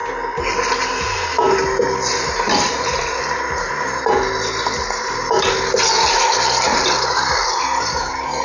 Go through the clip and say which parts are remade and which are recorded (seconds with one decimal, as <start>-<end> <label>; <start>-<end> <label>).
0.0-8.4 recorded